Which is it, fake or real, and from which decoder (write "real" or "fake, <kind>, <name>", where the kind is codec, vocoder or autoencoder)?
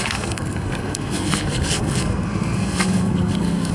fake, codec, SNAC